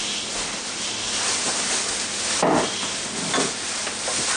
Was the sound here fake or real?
real